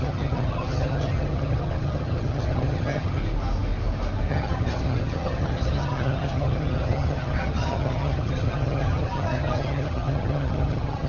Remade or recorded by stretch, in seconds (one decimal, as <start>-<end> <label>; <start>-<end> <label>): 0.0-3.2 remade; 3.2-4.3 recorded; 4.3-11.1 remade

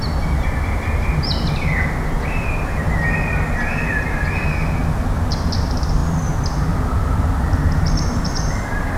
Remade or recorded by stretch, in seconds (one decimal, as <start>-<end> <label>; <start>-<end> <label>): 0.0-9.0 recorded